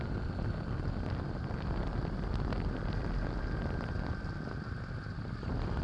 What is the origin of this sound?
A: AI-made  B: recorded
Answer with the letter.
A